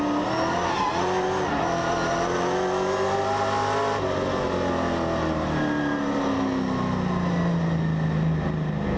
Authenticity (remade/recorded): recorded